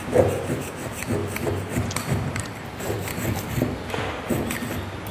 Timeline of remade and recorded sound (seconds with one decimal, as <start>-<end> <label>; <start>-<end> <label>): 0.0-1.2 recorded; 1.2-4.3 remade; 4.3-5.1 recorded